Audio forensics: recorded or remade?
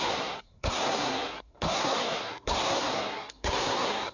remade